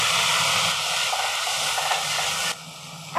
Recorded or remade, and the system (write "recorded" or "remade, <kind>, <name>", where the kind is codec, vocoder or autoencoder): recorded